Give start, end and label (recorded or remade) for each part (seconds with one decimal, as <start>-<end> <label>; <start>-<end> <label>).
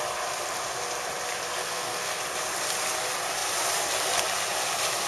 0.0-1.6 recorded; 1.6-2.2 remade; 2.2-5.1 recorded